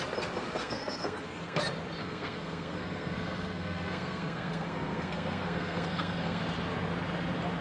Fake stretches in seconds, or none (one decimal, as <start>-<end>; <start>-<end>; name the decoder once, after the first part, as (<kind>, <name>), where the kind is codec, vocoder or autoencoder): 0.6-1.6 (codec, SNAC); 2.0-6.4